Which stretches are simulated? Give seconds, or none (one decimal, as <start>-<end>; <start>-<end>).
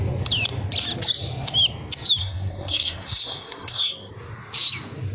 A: 2.2-4.1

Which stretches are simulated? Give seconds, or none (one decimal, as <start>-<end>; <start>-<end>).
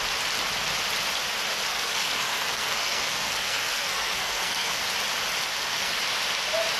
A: 1.7-4.8; 5.5-6.0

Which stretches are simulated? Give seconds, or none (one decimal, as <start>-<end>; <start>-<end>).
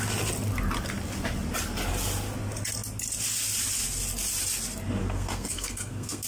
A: 5.0-6.3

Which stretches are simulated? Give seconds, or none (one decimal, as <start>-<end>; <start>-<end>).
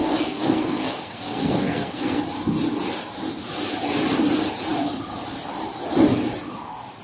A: 0.0-2.2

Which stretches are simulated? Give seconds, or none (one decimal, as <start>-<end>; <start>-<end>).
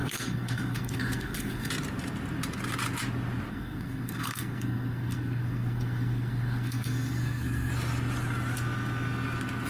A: 0.0-1.7; 3.5-7.7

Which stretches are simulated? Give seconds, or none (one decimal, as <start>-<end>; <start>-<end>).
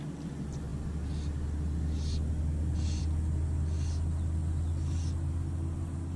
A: none